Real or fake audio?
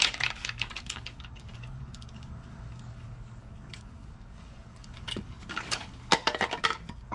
fake